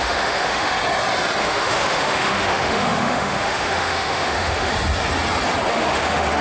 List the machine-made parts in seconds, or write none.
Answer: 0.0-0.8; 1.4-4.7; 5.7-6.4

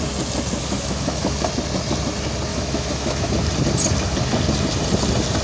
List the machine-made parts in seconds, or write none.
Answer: 0.6-1.5; 2.5-3.3